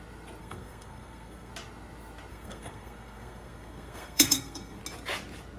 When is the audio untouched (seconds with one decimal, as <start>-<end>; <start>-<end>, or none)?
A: 0.0-0.4; 1.5-2.3; 4.8-5.6